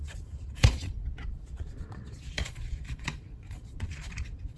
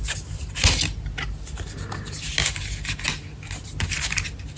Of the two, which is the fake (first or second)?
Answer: first